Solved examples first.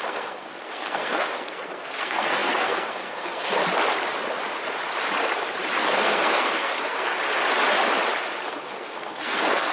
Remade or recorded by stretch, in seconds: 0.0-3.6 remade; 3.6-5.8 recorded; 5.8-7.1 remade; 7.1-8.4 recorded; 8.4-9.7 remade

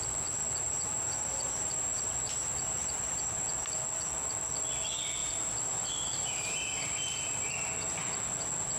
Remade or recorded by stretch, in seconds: 0.0-0.4 recorded; 0.4-3.6 remade; 3.6-5.2 recorded; 5.2-7.5 remade; 7.5-8.8 recorded

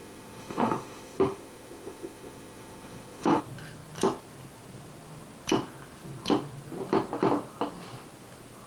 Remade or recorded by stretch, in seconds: 0.0-3.4 remade; 3.4-8.7 recorded

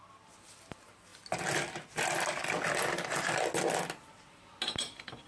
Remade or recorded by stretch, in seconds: 0.0-5.3 recorded

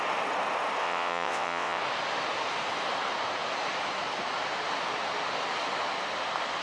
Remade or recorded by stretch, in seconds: 0.0-0.8 recorded; 0.8-1.8 remade; 1.8-6.6 recorded

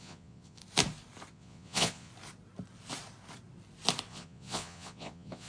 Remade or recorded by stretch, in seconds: 0.0-0.6 remade; 0.6-1.3 recorded; 1.3-2.1 remade; 2.1-4.1 recorded; 4.1-5.5 remade

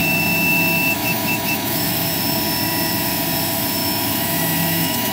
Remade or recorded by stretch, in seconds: 0.0-2.1 remade; 2.1-3.8 recorded; 3.8-5.1 remade